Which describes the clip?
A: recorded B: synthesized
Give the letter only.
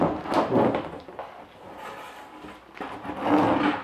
A